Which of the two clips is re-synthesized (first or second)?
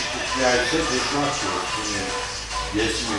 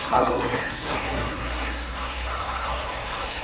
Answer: second